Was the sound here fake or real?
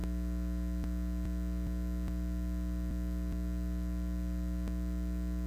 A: real